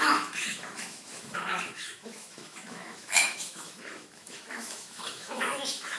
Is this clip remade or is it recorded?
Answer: remade